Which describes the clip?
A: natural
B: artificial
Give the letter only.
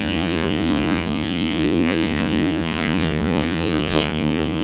B